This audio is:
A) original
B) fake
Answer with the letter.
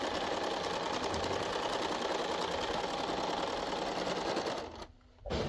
A